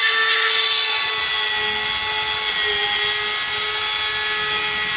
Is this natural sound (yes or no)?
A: yes